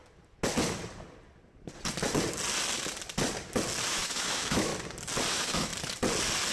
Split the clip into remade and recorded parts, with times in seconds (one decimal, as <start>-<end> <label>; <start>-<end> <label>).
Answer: 0.0-3.9 recorded; 3.9-4.7 remade; 4.7-5.3 recorded; 5.3-5.7 remade; 5.7-6.5 recorded